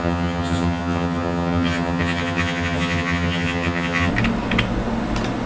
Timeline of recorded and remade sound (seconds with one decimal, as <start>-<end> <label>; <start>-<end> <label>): 0.0-4.1 remade; 4.1-5.5 recorded